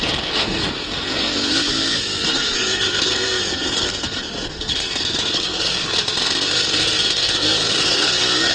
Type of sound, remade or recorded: remade